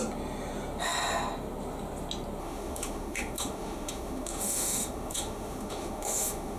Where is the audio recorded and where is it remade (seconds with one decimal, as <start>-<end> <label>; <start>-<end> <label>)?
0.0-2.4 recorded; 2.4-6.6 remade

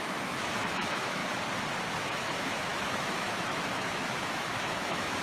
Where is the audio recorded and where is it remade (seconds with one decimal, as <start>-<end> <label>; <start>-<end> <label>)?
0.0-1.2 remade; 1.2-1.9 recorded; 1.9-5.2 remade

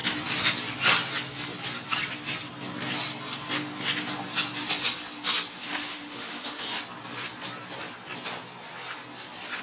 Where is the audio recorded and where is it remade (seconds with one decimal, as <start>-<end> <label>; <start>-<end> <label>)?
0.0-5.5 recorded; 5.5-6.8 remade; 6.8-9.6 recorded

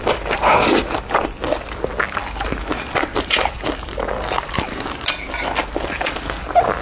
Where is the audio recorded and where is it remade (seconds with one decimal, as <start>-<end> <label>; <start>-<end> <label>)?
0.0-6.8 recorded

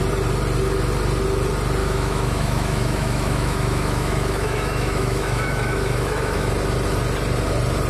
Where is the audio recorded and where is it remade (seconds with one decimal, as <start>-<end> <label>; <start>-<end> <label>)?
0.0-1.8 recorded; 1.8-6.5 remade; 6.5-7.9 recorded